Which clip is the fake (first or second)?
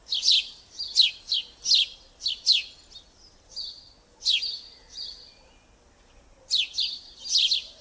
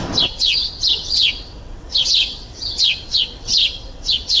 second